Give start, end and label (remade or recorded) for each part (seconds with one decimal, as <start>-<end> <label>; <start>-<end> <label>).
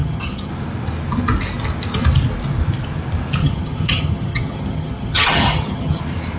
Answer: 0.0-0.5 remade; 0.5-3.4 recorded; 3.4-6.0 remade; 6.0-6.4 recorded